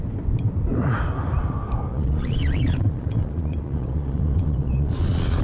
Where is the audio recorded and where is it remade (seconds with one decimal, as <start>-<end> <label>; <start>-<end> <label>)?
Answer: 0.0-1.9 recorded; 1.9-5.4 remade